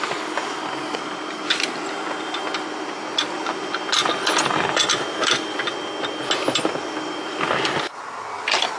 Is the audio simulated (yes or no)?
no